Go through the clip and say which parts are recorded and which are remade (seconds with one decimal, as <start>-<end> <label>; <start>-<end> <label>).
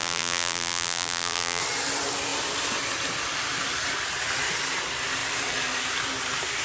0.0-1.6 remade; 1.6-6.6 recorded